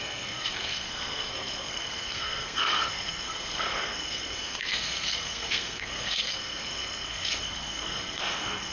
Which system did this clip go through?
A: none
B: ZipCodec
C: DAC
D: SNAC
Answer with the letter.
D